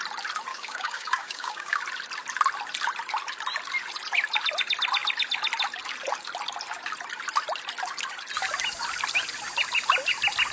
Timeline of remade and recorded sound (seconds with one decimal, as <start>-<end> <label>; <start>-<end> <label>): 0.0-0.5 recorded; 0.5-1.8 remade; 1.8-10.5 recorded